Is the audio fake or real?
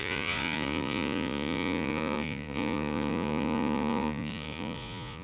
fake